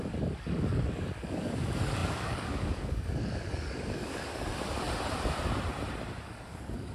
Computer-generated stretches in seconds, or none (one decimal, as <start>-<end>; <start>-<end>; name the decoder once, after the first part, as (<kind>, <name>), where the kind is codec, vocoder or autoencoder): 0.0-4.5 (codec, DAC); 6.2-6.9